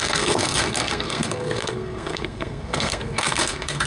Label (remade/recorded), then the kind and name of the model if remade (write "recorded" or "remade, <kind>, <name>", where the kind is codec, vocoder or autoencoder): remade, codec, SNAC